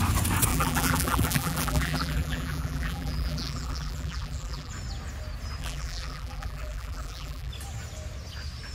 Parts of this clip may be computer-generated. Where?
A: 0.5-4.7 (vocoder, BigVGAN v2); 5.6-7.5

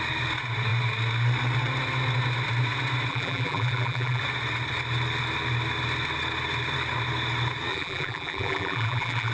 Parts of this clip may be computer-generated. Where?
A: 3.1-4.2 (vocoder, BigVGAN v2); 7.7-9.3

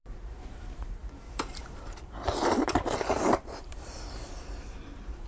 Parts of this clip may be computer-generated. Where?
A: 0.0-5.3 (vocoder, BigVGAN v2)

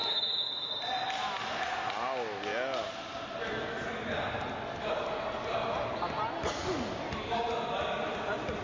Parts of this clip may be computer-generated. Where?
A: 0.0-0.7 (autoencoder, DAC-VAE)

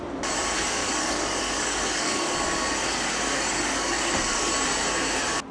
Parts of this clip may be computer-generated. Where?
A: 0.8-2.3 (codec, DAC); 2.8-4.5